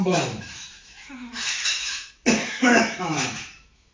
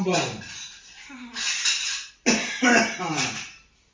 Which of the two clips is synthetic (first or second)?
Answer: first